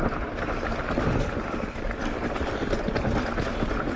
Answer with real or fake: real